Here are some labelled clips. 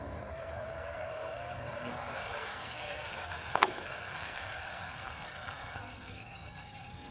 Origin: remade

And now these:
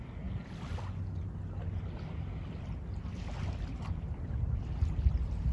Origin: recorded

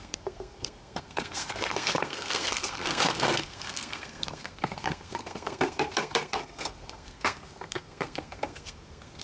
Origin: remade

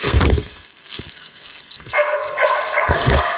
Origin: remade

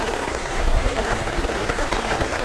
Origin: remade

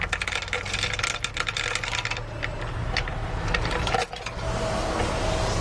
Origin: recorded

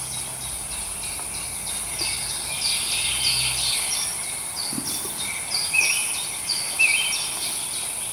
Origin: recorded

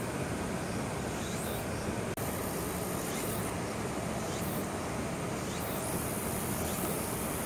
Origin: recorded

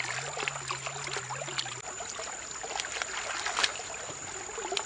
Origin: recorded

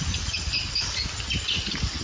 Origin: recorded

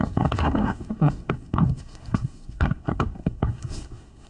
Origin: remade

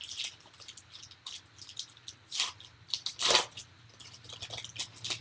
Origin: recorded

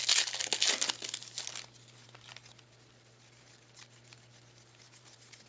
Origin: recorded